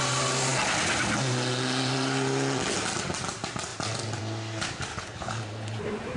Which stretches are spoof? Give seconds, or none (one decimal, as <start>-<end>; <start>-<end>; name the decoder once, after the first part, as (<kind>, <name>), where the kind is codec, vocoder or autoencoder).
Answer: 4.9-5.8 (codec, HILCodec)